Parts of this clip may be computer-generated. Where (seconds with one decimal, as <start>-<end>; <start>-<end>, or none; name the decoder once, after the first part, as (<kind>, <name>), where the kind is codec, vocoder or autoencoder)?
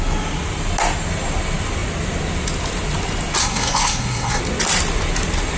3.4-4.4 (codec, SNAC)